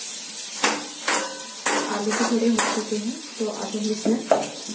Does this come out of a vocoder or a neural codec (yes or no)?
no